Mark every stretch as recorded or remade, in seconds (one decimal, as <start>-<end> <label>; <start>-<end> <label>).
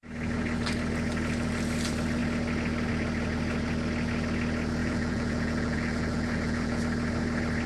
0.0-4.8 recorded; 4.8-6.8 remade; 6.8-7.7 recorded